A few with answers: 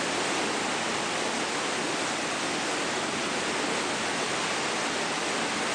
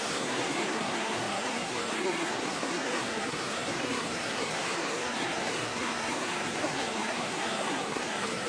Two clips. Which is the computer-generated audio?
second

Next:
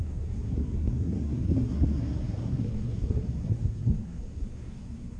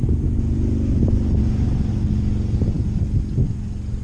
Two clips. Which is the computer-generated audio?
first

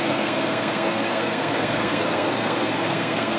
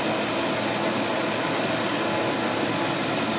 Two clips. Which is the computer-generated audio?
first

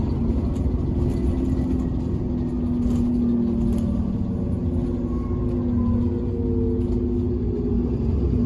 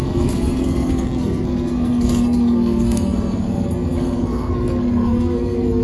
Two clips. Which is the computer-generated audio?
second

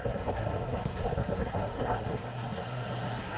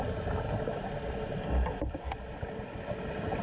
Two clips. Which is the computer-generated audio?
first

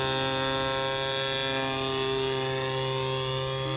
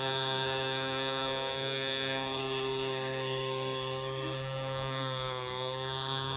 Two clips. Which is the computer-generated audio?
second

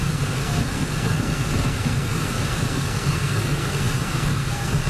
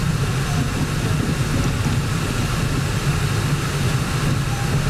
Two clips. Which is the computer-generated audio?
first